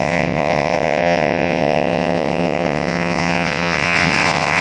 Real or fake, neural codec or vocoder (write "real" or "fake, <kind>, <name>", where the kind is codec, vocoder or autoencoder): fake, vocoder, WaveNeXt